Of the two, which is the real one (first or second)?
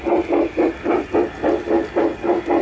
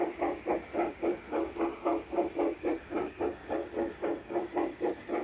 first